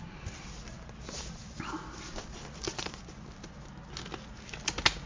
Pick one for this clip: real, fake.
real